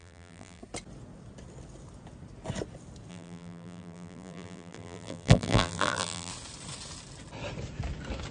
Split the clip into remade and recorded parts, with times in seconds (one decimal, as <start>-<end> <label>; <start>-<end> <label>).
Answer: 0.0-0.6 remade; 0.6-3.1 recorded; 3.1-6.3 remade; 6.3-8.3 recorded